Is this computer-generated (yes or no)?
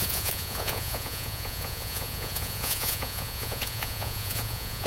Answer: yes